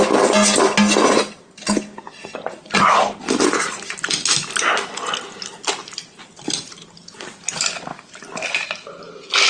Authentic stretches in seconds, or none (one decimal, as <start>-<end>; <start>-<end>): 0.0-9.5